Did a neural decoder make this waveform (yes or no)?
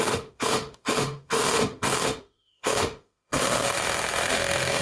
yes